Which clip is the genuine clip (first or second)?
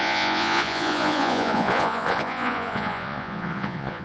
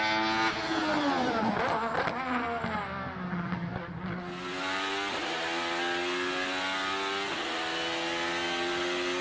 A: second